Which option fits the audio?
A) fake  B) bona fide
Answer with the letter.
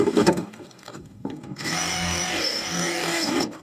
A